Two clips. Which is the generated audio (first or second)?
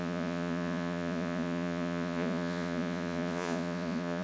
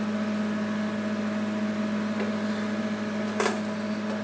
first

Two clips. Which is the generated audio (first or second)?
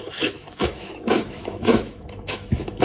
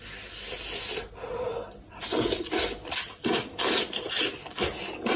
first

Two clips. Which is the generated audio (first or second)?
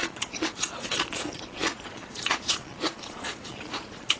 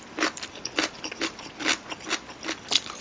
first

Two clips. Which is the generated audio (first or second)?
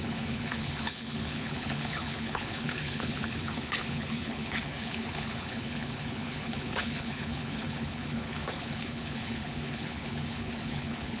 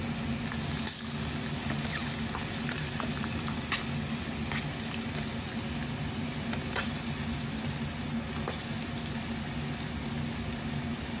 first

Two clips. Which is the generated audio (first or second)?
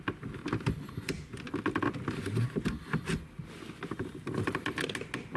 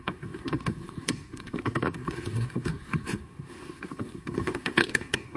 second